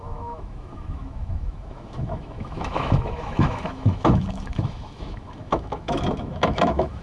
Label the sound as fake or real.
fake